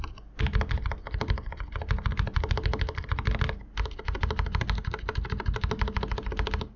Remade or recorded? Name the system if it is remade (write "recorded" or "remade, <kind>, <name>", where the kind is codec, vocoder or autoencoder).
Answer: recorded